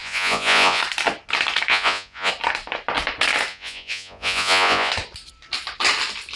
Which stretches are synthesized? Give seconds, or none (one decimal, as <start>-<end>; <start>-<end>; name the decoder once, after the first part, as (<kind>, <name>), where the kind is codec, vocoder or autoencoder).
0.0-0.8 (vocoder, Vocos); 1.7-2.3; 3.5-4.9